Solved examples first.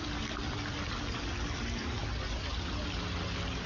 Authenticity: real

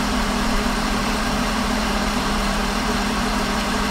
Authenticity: fake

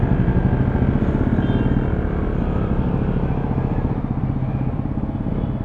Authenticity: real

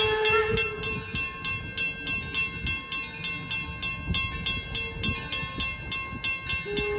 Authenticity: real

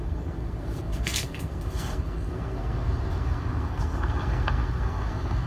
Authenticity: fake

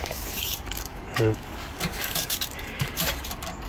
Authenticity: fake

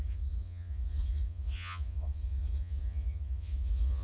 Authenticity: fake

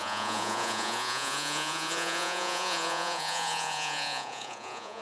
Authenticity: fake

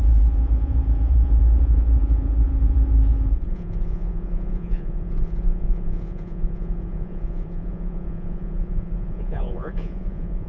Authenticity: fake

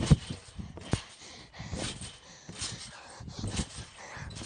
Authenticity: real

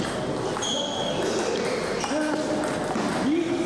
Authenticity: real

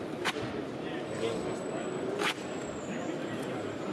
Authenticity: real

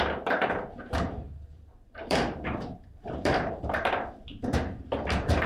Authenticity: fake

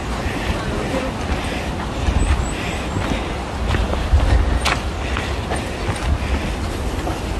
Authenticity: real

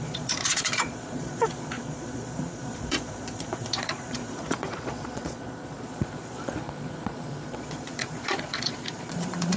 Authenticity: fake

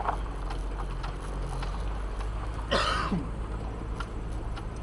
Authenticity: real